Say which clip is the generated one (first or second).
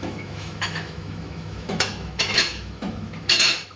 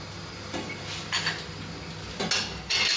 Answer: first